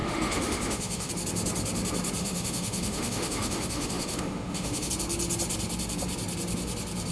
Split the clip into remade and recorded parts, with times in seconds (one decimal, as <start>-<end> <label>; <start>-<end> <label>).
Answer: 0.0-1.1 remade; 1.1-2.2 recorded; 2.2-4.9 remade; 4.9-7.1 recorded